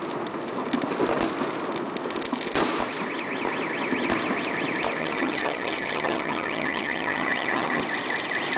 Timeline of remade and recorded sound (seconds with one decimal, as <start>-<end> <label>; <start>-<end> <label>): 0.0-5.0 recorded; 5.0-7.8 remade; 7.8-8.6 recorded